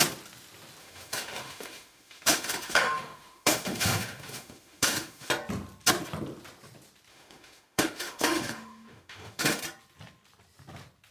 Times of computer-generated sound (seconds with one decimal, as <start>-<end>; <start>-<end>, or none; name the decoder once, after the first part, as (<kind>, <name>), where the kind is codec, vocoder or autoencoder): 0.8-5.3 (autoencoder, DAC-VAE); 7.1-9.6